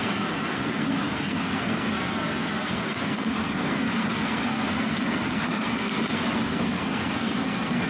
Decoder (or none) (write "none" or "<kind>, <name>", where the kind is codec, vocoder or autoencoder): codec, SNAC